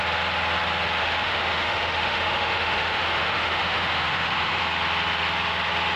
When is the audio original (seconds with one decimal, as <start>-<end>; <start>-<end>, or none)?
0.0-1.0; 4.6-6.0